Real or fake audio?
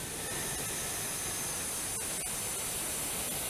real